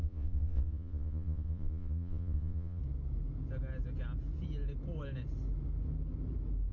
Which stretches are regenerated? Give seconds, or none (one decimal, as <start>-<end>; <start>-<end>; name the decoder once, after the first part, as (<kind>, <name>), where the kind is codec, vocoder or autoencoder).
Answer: 0.0-2.8 (vocoder, Vocos)